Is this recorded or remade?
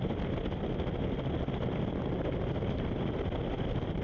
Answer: recorded